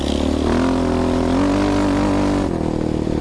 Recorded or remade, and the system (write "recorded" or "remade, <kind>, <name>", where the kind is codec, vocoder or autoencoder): recorded